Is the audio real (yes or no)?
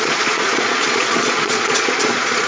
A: no